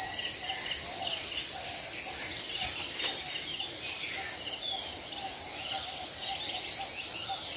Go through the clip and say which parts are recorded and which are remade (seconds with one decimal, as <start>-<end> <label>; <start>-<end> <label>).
0.0-7.6 recorded

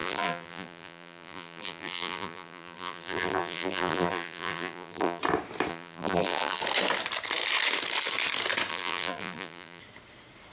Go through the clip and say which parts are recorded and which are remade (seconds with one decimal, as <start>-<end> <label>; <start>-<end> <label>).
0.0-5.2 remade; 5.2-5.7 recorded; 5.7-6.6 remade; 6.6-8.7 recorded; 8.7-9.8 remade; 9.8-10.5 recorded

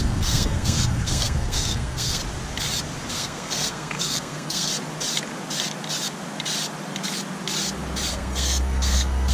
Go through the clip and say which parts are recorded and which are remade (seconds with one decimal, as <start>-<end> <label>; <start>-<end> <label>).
0.0-2.2 remade; 2.2-3.1 recorded; 3.1-4.7 remade; 4.7-8.1 recorded; 8.1-9.3 remade

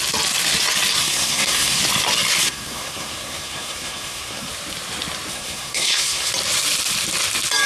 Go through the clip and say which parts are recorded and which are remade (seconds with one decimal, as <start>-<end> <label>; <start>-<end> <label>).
0.0-1.0 recorded; 1.0-1.8 remade; 1.8-2.4 recorded; 2.4-4.5 remade; 4.5-5.3 recorded; 5.3-6.3 remade; 6.3-7.7 recorded

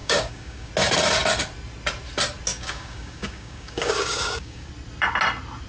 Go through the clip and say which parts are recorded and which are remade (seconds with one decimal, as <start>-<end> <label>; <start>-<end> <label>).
0.0-0.7 remade; 0.7-2.5 recorded; 2.5-4.7 remade; 4.7-5.7 recorded

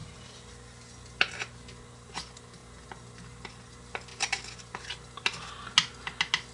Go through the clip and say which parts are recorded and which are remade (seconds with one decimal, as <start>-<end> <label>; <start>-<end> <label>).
0.0-6.5 recorded

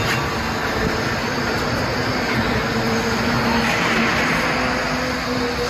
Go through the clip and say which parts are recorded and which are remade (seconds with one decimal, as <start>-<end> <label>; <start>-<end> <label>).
0.0-5.7 recorded

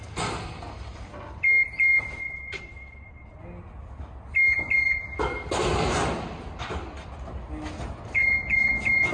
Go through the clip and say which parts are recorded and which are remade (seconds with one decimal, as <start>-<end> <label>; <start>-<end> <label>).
0.0-2.2 recorded; 2.2-3.4 remade; 3.4-9.1 recorded